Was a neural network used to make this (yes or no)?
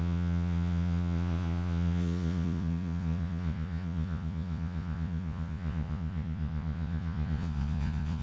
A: yes